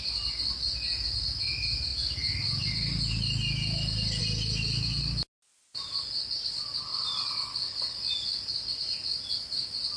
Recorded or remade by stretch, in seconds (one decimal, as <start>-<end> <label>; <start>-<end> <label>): 0.0-10.0 recorded